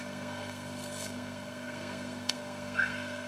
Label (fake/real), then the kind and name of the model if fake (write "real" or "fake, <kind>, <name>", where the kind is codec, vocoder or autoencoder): fake, codec, SNAC